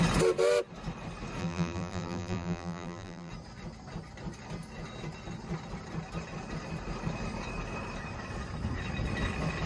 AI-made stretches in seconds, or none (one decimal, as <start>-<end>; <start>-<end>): 1.4-3.3